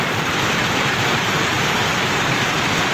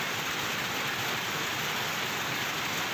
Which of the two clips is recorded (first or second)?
second